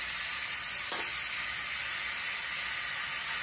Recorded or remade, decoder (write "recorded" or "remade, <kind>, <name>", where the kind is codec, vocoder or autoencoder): recorded